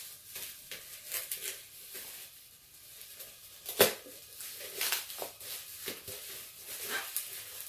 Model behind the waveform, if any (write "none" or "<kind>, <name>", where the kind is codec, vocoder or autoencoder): none